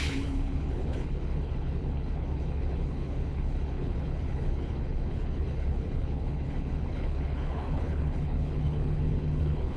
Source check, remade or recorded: remade